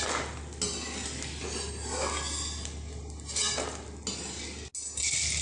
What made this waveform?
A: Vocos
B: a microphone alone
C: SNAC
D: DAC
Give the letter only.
B